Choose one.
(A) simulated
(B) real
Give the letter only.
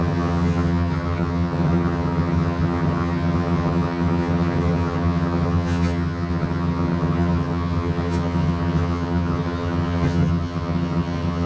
A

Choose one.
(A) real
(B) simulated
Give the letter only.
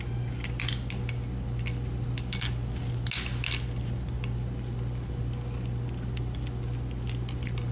A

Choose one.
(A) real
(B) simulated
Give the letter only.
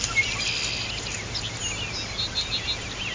A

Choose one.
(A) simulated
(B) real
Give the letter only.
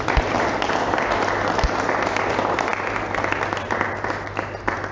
B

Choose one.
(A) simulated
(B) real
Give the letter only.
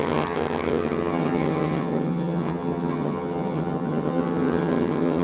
A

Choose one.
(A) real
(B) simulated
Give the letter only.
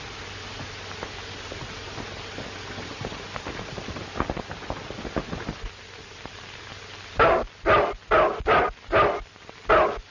A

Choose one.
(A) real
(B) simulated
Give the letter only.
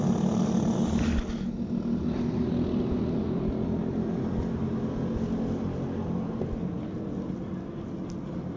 A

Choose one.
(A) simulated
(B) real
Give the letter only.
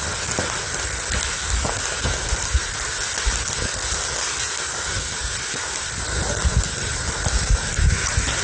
B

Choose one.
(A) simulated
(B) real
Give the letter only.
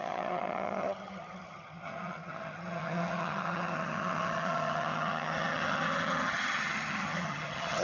A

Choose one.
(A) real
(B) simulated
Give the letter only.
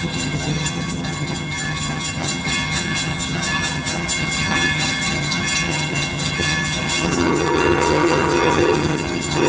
B